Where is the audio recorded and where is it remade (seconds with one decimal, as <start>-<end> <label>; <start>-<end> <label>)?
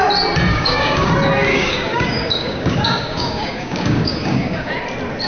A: 0.0-0.5 recorded; 0.5-1.1 remade; 1.1-1.5 recorded; 1.5-4.7 remade; 4.7-5.3 recorded